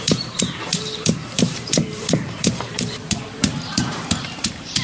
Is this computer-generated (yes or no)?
yes